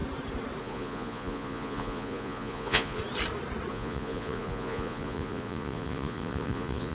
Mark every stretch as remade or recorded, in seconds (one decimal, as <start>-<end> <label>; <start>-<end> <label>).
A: 0.0-0.6 recorded; 0.6-3.0 remade; 3.0-3.7 recorded; 3.7-6.9 remade